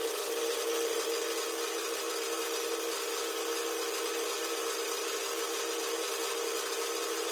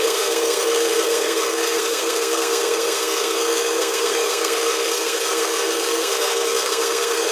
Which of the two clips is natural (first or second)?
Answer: first